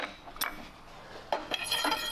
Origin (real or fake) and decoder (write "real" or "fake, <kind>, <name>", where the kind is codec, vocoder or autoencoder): real